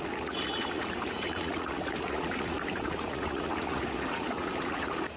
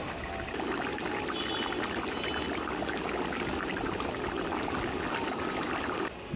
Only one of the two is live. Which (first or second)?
second